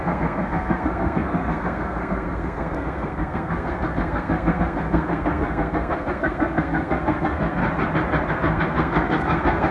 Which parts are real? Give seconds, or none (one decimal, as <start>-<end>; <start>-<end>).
7.6-8.3